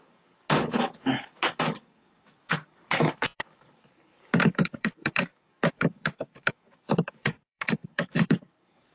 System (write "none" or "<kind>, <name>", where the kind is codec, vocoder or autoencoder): codec, DAC